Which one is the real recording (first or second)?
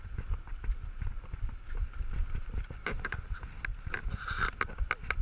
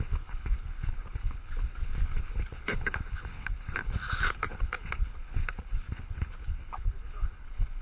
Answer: first